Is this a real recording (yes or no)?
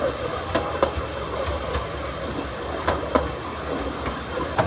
yes